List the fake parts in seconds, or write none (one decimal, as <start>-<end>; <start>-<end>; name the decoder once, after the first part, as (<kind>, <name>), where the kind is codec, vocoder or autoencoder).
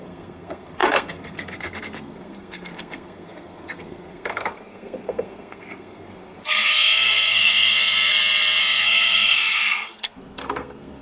0.0-8.1 (codec, SNAC); 8.6-11.0